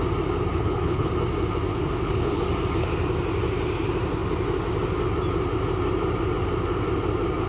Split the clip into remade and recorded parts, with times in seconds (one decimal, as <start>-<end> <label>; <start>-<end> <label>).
0.0-0.5 recorded; 0.5-1.1 remade; 1.1-1.7 recorded; 1.7-2.4 remade; 2.4-7.5 recorded